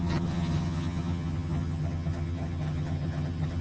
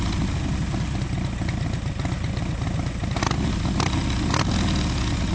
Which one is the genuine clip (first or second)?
second